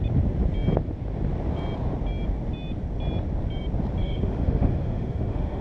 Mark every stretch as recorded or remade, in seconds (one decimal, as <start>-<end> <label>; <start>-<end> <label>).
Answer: 0.0-4.0 recorded; 4.0-5.6 remade